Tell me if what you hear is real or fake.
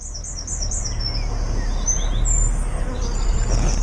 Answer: real